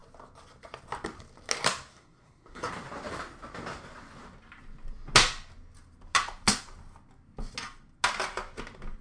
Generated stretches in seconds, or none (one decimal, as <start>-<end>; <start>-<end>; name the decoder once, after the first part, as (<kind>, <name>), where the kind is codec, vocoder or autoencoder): 1.9-2.7 (codec, SNAC)